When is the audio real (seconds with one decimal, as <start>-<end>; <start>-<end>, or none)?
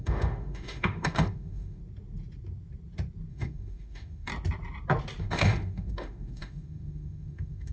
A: 1.8-3.3; 4.3-5.2